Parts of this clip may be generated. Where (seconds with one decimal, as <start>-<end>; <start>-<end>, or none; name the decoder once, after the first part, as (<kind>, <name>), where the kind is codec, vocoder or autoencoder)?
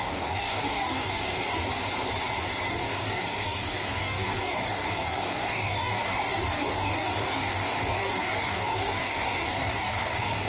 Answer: 0.0-1.6 (codec, DAC); 2.7-10.5